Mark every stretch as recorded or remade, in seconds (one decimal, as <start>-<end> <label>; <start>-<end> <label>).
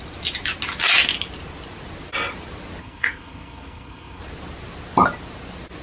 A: 0.0-2.8 recorded; 2.8-4.2 remade; 4.2-5.8 recorded